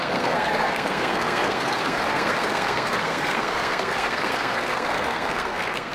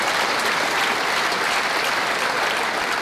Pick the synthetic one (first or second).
first